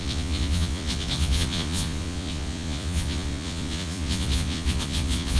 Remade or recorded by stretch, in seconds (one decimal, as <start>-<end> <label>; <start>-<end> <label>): 0.0-5.4 remade